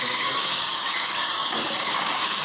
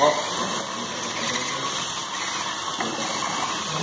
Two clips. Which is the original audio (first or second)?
second